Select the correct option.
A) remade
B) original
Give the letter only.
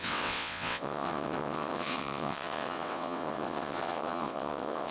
A